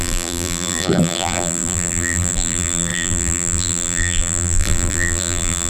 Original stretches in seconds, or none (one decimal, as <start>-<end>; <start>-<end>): none